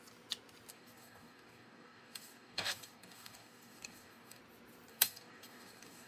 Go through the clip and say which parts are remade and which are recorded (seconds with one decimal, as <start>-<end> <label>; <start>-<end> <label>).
0.0-0.7 recorded; 0.7-4.4 remade; 4.4-4.9 recorded; 4.9-6.1 remade